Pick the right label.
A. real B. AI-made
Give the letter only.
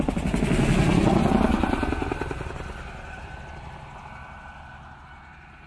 A